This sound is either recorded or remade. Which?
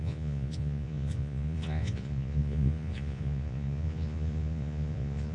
remade